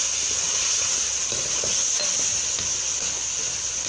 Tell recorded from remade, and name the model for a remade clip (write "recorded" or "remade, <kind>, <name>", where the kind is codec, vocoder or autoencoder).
recorded